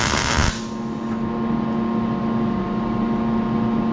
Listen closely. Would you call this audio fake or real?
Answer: real